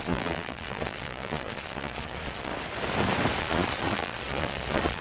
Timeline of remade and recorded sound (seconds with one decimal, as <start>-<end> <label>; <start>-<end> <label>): 0.0-2.5 remade; 2.5-3.4 recorded; 3.4-5.0 remade